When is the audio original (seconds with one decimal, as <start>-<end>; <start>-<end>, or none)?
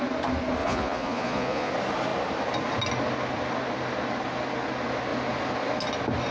0.0-0.6; 1.7-6.3